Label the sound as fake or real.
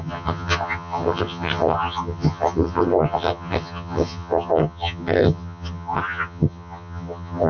fake